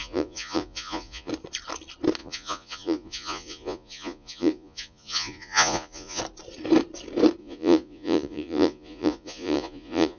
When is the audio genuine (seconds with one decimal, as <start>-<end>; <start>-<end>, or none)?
1.3-2.2; 6.2-7.4